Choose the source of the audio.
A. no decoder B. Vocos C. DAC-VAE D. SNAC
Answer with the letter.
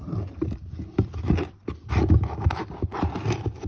A